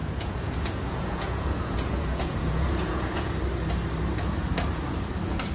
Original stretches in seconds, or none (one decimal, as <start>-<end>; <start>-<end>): 3.3-5.5